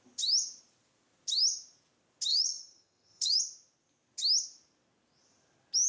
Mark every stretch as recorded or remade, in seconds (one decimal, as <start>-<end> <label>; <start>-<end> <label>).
0.0-2.3 recorded; 2.3-3.4 remade; 3.4-5.9 recorded